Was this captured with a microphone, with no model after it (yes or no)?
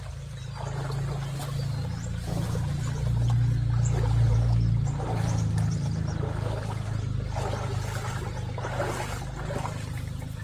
yes